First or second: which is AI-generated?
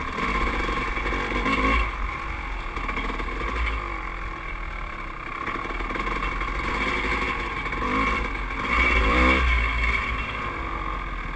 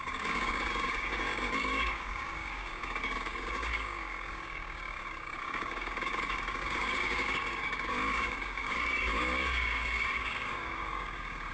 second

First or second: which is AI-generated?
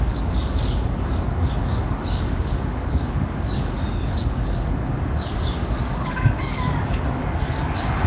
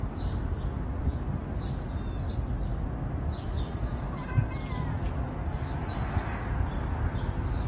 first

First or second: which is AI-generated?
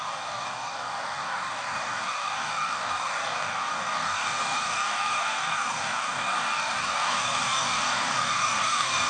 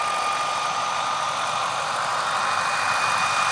first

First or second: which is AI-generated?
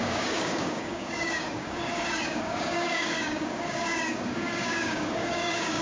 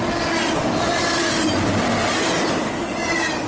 first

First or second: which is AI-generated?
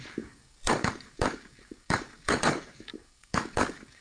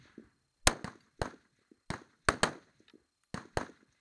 first